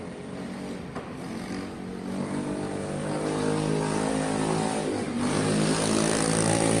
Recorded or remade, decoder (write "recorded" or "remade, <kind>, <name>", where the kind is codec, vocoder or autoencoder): recorded